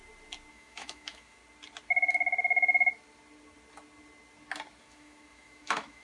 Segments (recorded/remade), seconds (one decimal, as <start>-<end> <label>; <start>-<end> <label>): 0.0-0.5 recorded; 0.5-1.4 remade; 1.4-4.8 recorded; 4.8-6.0 remade